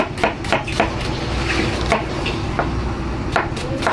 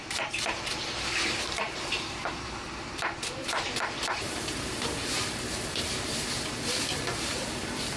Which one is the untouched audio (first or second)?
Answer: first